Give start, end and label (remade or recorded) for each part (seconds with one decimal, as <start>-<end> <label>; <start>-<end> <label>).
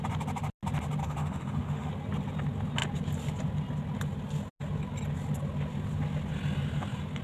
0.0-1.0 recorded; 1.0-1.9 remade; 1.9-7.2 recorded